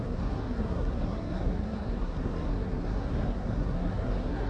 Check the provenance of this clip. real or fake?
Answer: fake